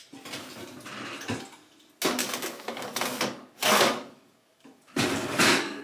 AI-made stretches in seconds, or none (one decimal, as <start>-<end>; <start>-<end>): 2.2-5.8